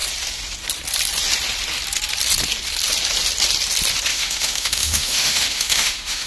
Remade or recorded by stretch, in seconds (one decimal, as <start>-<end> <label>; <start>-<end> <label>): 0.0-4.1 recorded; 4.1-6.3 remade